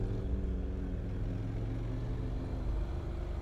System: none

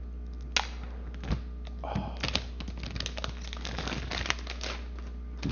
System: none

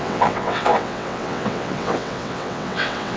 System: vocoder, WaveNeXt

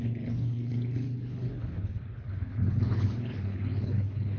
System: codec, HILCodec